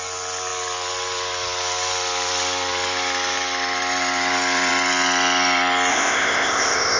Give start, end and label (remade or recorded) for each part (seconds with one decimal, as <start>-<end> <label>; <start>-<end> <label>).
0.0-5.9 recorded; 5.9-7.0 remade